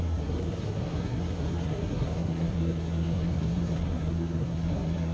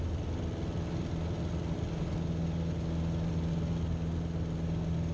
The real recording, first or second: second